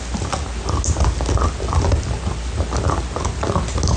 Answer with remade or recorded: recorded